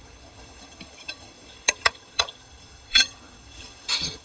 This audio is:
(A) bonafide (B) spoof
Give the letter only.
B